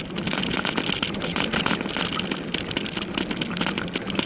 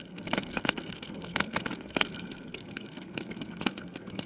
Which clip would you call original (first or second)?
first